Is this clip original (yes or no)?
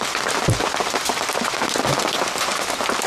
yes